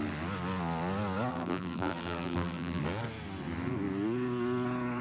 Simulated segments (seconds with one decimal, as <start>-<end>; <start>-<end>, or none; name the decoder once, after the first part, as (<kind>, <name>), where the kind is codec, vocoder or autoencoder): 1.3-2.8 (vocoder, BigVGAN v2)